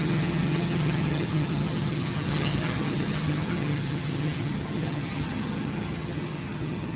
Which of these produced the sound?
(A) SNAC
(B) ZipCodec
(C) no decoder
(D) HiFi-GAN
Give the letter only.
D